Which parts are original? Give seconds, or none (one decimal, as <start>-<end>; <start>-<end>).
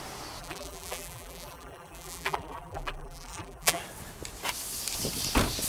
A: 0.0-0.4; 3.8-5.7